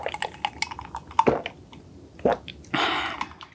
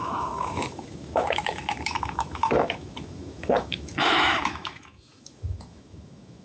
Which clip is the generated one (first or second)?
second